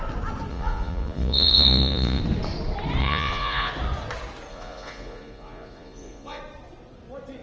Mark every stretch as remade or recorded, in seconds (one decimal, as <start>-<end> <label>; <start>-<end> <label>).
0.0-0.5 recorded; 0.5-2.2 remade; 2.2-3.0 recorded; 3.0-3.7 remade; 3.7-4.5 recorded; 4.5-6.4 remade; 6.4-7.4 recorded